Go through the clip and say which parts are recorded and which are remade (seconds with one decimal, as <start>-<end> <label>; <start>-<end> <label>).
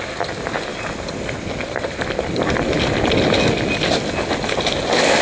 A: 0.0-5.2 recorded